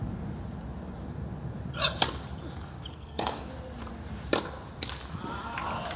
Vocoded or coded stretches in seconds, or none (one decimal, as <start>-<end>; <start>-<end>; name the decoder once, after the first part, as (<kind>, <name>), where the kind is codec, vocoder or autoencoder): 2.9-3.5 (codec, SNAC)